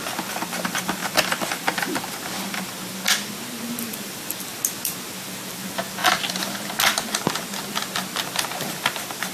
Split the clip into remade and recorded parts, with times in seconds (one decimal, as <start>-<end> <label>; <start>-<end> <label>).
0.0-1.0 remade; 1.0-3.6 recorded; 3.6-6.0 remade; 6.0-8.2 recorded; 8.2-9.3 remade